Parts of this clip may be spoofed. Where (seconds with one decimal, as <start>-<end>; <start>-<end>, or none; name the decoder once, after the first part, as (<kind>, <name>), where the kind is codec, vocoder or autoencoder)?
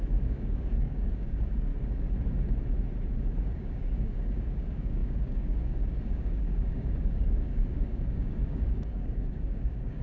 0.0-1.7 (codec, DAC); 3.4-10.0